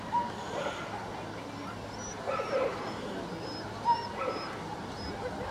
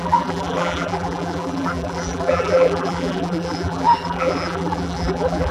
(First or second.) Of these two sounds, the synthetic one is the second